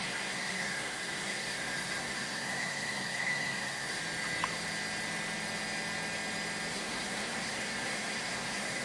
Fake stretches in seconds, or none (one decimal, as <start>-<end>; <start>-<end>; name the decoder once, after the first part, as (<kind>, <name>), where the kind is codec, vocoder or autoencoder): 0.0-4.0 (codec, SNAC); 6.7-8.8